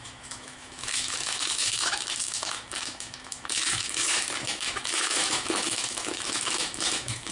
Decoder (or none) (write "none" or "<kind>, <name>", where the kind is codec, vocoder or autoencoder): autoencoder, DAC-VAE